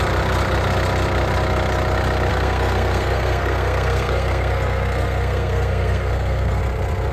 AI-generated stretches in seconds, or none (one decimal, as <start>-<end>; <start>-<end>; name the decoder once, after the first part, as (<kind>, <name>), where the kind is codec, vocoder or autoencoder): 2.3-6.6 (codec, SNAC)